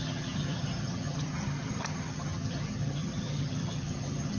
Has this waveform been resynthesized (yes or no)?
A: yes